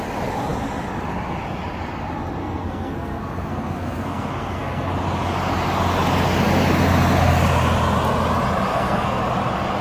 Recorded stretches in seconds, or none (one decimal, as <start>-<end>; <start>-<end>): 0.0-2.4; 4.9-8.7; 9.2-9.8